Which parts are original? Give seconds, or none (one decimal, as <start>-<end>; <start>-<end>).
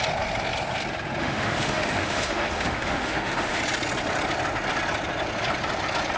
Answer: 0.0-1.2; 3.6-6.2